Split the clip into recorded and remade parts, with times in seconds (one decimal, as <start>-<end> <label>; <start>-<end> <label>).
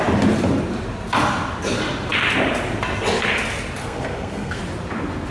0.0-3.8 recorded; 3.8-4.6 remade; 4.6-5.3 recorded